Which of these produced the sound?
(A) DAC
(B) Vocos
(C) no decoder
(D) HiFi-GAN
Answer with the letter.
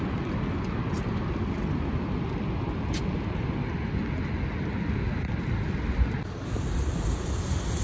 C